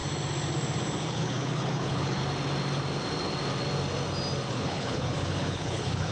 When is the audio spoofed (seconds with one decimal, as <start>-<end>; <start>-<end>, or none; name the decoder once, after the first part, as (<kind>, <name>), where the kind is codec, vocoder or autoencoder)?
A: 1.0-2.2 (codec, HILCodec); 4.5-6.1